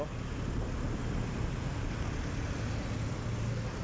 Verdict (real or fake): real